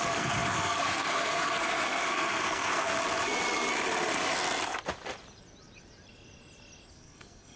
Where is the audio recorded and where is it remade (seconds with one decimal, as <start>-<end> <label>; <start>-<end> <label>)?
0.0-2.9 remade; 2.9-6.9 recorded; 6.9-7.6 remade